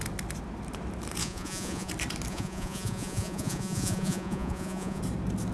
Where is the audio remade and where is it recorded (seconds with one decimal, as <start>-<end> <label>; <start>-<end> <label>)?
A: 0.0-1.2 recorded; 1.2-1.9 remade; 1.9-2.3 recorded; 2.3-5.0 remade; 5.0-5.5 recorded